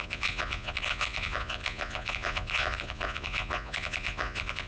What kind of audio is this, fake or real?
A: fake